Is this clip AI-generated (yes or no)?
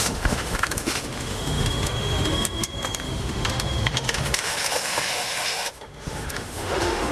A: yes